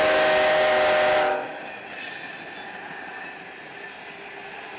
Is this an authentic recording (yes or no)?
yes